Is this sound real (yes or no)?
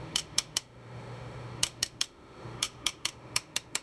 no